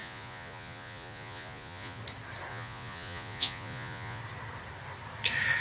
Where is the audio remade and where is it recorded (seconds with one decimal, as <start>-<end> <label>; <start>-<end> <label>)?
0.0-2.0 remade; 2.0-2.5 recorded; 2.5-4.2 remade; 4.2-5.6 recorded